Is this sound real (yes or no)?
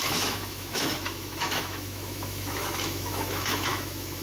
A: no